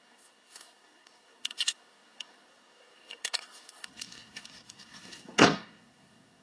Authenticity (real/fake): fake